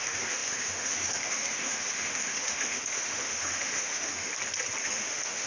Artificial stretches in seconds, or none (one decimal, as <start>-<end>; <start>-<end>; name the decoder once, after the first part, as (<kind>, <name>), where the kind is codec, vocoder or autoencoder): 0.0-4.3 (autoencoder, DAC-VAE); 4.8-5.5